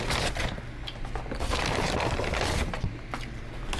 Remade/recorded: recorded